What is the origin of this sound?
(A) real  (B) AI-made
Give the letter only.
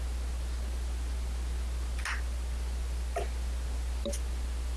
A